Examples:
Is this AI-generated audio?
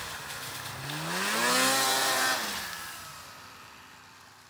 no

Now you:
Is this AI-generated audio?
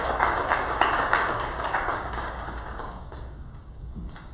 yes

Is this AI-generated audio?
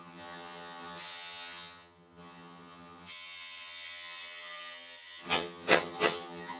yes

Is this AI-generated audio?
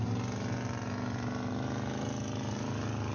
no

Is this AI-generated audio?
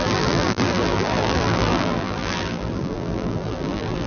yes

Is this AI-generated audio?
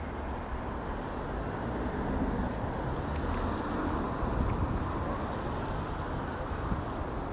no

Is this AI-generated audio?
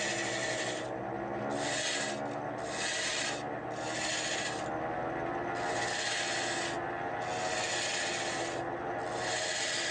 no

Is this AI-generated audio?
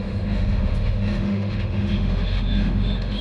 yes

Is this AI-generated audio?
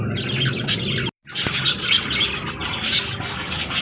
no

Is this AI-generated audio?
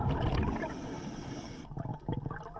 no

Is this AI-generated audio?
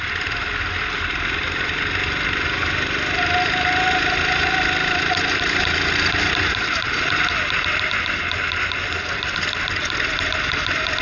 no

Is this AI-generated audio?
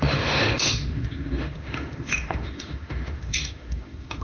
yes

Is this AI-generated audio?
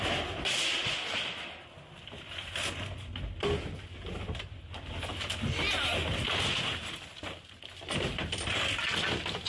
no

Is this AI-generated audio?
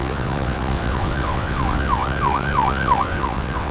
yes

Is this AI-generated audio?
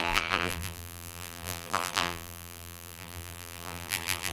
yes